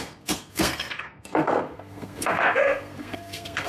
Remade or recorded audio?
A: remade